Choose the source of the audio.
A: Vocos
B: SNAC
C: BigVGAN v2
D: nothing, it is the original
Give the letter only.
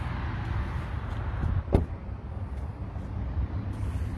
D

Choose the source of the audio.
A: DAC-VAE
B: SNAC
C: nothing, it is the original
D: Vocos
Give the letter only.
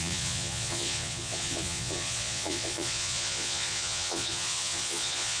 D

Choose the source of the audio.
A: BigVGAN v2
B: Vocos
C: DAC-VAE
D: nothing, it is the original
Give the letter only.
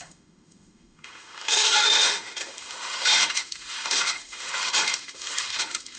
C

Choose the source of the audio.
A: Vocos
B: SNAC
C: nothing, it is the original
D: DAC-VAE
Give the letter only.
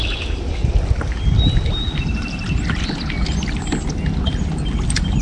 C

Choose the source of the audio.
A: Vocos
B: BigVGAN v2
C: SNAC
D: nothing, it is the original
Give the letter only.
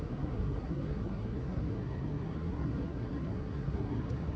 C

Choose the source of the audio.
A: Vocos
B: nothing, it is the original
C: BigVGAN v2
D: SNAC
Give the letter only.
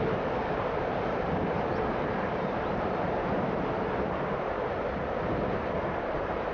C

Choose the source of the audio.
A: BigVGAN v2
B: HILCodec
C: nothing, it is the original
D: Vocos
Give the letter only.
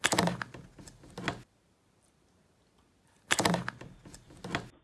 C